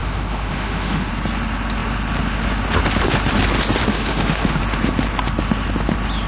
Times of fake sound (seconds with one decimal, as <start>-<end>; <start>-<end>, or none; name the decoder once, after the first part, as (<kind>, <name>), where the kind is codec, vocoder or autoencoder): 0.0-1.1 (autoencoder, DAC-VAE); 3.9-4.6